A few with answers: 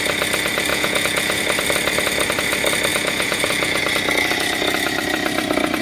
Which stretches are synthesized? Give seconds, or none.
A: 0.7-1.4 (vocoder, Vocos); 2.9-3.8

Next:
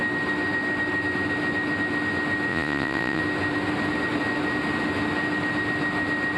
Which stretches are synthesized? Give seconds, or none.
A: 2.5-3.2 (vocoder, Vocos)

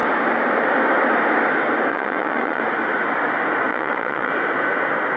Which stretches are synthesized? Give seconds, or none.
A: 1.9-2.6 (vocoder, Vocos); 3.7-4.3

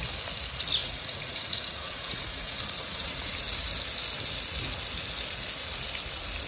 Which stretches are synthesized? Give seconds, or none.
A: 0.8-3.3 (vocoder, Vocos)